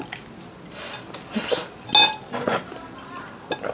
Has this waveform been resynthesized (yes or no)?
no